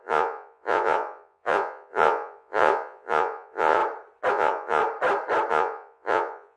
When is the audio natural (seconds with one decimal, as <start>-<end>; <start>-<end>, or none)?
3.8-4.3; 4.8-5.5